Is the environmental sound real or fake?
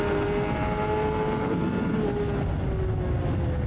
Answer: real